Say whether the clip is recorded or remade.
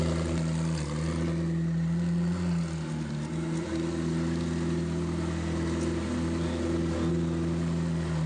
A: recorded